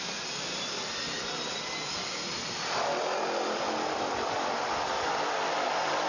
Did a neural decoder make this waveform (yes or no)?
no